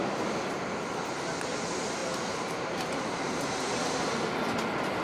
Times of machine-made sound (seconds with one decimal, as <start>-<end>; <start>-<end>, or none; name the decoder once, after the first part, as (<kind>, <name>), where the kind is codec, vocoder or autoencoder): 2.0-2.9 (vocoder, BigVGAN v2)